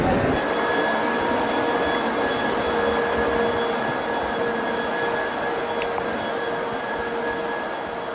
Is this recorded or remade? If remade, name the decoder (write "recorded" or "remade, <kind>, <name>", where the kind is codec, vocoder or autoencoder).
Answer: recorded